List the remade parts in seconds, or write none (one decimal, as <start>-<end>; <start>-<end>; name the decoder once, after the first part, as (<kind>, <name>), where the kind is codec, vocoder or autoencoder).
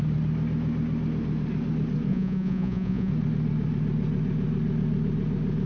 2.1-3.1 (vocoder, Vocos)